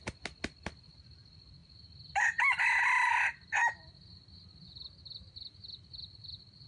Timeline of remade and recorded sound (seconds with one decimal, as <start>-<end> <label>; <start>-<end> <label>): 0.0-6.7 recorded